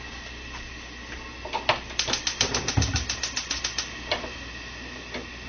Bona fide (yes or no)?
yes